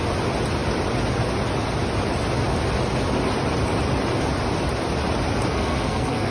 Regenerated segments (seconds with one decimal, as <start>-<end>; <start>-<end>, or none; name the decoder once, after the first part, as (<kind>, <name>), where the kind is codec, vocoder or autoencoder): 5.5-6.3 (codec, SNAC)